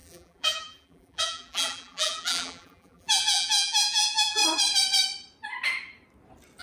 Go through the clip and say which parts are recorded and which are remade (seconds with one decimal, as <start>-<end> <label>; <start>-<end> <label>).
0.0-4.4 remade; 4.4-6.6 recorded